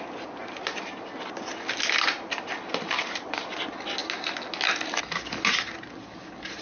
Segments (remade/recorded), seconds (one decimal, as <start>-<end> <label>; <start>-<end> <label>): 0.0-6.6 recorded